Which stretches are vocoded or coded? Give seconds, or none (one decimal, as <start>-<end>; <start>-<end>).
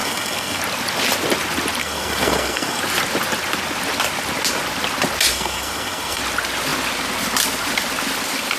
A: 0.0-0.6; 1.8-2.8; 5.3-6.2